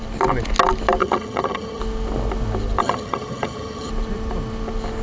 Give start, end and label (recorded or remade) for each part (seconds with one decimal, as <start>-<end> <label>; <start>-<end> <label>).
0.0-1.0 recorded; 1.0-1.8 remade; 1.8-2.8 recorded; 2.8-3.9 remade; 3.9-5.0 recorded